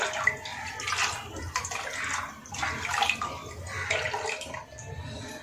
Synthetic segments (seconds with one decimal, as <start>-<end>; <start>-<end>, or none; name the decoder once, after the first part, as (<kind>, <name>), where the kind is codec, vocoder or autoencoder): none